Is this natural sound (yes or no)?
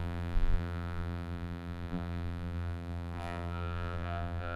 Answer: no